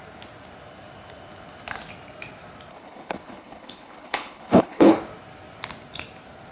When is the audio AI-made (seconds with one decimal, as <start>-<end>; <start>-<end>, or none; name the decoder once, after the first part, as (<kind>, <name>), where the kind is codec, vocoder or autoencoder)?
2.7-4.9 (codec, HILCodec)